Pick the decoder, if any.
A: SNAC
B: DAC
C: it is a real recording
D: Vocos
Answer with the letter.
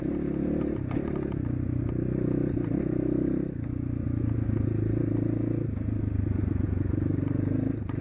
C